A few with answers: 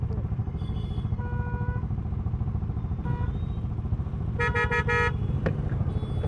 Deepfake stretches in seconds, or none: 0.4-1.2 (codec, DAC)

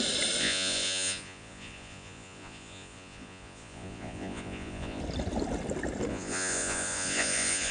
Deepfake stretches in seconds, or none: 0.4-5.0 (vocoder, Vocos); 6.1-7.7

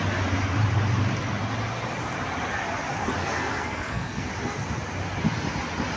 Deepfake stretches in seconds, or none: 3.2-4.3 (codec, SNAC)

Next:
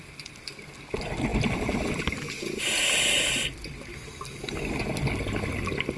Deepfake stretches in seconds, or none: none

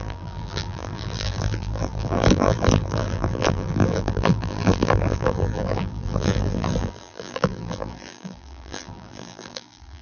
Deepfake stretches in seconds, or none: 0.0-10.0 (vocoder, BigVGAN v2)

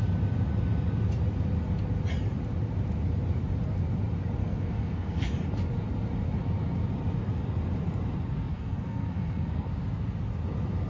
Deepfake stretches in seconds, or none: 4.4-5.3 (codec, SNAC); 8.5-9.7